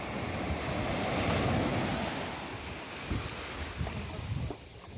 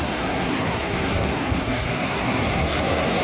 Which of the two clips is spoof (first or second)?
second